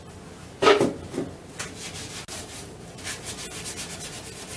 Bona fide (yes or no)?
yes